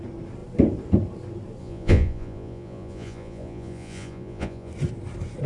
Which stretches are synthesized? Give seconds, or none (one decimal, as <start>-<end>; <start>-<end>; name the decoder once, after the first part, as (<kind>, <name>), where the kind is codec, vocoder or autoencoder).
1.6-4.7 (vocoder, Vocos)